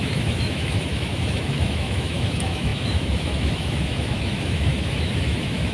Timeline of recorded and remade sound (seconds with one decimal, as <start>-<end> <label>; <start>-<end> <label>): 0.0-5.7 remade